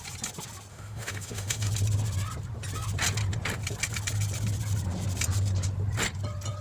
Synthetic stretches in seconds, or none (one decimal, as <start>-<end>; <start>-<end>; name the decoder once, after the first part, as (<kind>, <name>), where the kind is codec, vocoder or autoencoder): 0.7-1.7 (autoencoder, DAC-VAE)